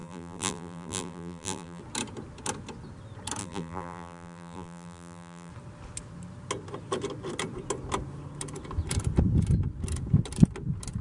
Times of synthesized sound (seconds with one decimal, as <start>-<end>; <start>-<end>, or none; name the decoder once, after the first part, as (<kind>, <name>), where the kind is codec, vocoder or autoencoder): 0.0-1.8 (vocoder, BigVGAN v2); 3.4-5.5